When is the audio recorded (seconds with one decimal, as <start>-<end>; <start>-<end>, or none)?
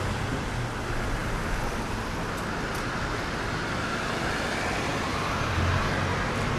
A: 0.0-6.6